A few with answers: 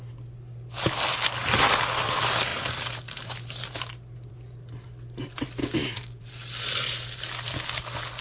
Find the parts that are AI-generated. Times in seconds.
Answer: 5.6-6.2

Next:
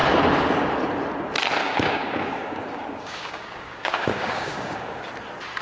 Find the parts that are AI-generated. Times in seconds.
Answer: 1.6-5.0

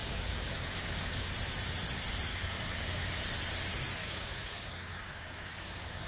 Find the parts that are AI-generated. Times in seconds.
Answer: 0.0-1.3; 2.3-3.2; 4.0-6.1

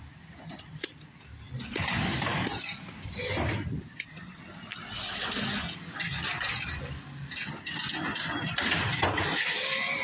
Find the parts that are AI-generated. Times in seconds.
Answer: none

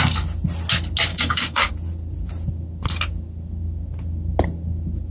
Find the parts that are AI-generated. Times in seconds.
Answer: 1.1-1.7

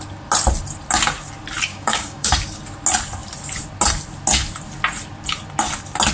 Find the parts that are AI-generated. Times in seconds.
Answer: 1.7-2.3